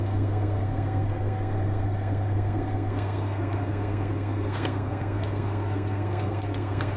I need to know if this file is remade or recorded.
remade